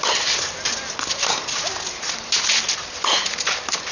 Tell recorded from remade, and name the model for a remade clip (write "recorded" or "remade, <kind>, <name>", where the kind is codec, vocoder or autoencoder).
recorded